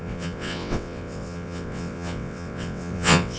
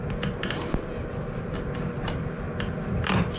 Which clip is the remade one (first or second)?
first